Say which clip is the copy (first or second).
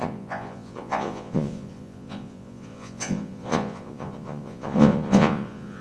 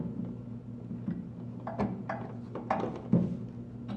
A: first